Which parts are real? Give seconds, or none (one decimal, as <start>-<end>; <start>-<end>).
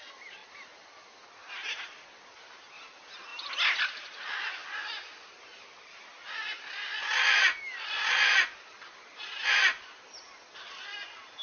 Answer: 0.0-11.4